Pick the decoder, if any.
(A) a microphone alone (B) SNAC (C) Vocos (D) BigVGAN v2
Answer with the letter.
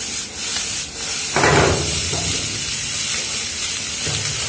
A